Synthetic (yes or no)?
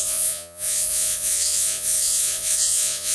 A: yes